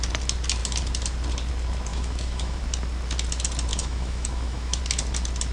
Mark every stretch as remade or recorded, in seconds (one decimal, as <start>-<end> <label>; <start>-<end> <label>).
0.0-1.9 recorded; 1.9-2.6 remade; 2.6-3.7 recorded; 3.7-4.8 remade; 4.8-5.5 recorded